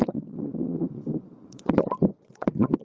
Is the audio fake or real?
fake